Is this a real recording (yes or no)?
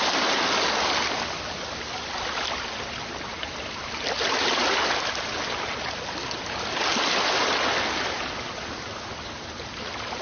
yes